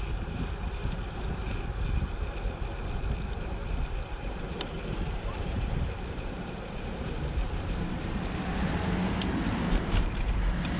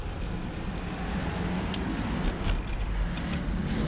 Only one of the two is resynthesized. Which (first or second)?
first